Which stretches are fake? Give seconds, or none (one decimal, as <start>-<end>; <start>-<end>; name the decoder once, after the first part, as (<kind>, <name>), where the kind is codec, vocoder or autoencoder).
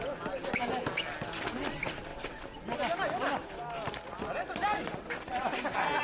none